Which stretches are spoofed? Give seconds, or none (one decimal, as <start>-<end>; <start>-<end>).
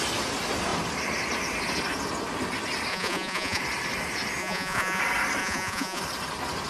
2.9-3.6; 4.4-5.0; 5.4-6.0